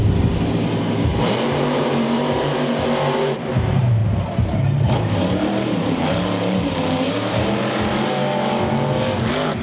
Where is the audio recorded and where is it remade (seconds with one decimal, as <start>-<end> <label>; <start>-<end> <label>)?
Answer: 0.0-1.1 recorded; 1.1-3.5 remade; 3.5-4.0 recorded; 4.0-7.7 remade; 7.7-9.6 recorded